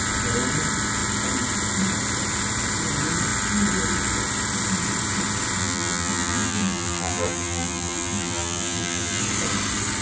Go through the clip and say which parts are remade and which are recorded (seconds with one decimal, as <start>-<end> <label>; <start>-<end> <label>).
0.0-5.6 recorded; 5.6-9.2 remade; 9.2-10.0 recorded